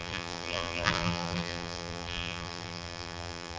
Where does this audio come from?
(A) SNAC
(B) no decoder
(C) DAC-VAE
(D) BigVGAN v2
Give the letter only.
D